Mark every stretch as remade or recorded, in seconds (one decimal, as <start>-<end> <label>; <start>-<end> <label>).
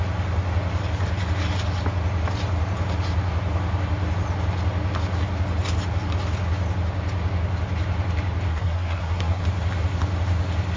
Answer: 0.0-8.5 recorded; 8.5-9.4 remade; 9.4-10.8 recorded